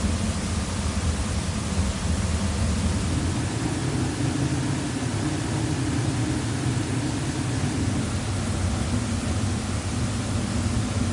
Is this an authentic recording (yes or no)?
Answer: yes